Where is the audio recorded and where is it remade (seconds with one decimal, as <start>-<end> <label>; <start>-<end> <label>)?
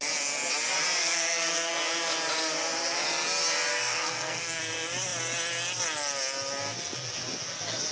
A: 0.0-1.0 recorded; 1.0-1.7 remade; 1.7-3.7 recorded; 3.7-4.6 remade; 4.6-7.9 recorded